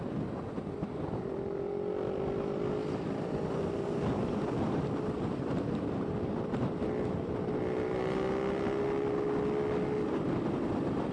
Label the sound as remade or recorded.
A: recorded